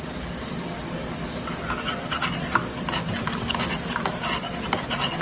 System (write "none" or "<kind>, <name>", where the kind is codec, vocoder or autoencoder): none